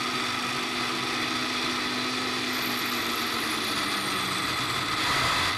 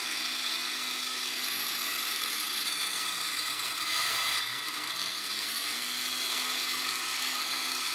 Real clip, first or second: first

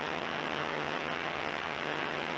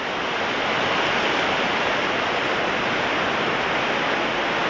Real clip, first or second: second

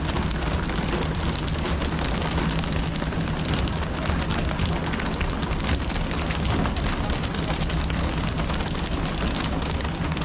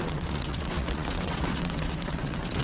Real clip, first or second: first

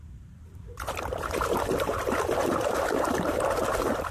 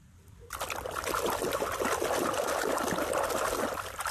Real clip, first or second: second